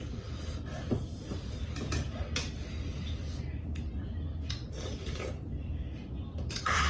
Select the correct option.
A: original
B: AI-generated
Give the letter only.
A